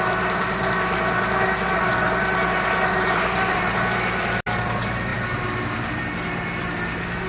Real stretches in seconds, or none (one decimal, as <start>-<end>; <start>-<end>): 0.0-7.3